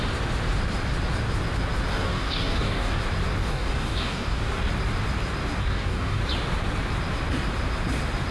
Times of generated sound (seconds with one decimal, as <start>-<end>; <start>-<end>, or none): 1.9-3.0; 3.4-4.7; 5.6-6.2